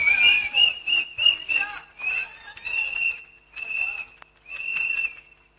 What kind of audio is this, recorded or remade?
recorded